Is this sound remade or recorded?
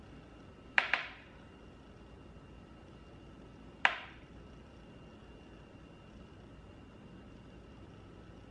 recorded